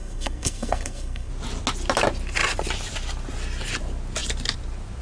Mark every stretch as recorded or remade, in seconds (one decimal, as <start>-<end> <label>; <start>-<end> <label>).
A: 0.0-1.3 remade; 1.3-5.0 recorded

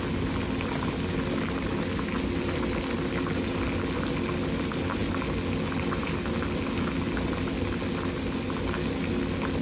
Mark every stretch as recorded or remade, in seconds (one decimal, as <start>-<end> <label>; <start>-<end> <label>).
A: 0.0-9.6 recorded